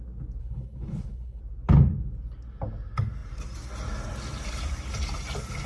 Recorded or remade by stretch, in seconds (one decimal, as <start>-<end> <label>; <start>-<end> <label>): 0.0-0.4 recorded; 0.4-1.4 remade; 1.4-5.7 recorded